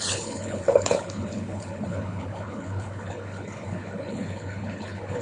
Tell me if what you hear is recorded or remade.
remade